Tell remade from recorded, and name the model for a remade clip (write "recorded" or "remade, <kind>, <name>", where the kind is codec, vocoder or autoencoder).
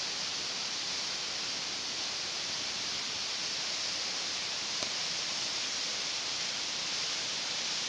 recorded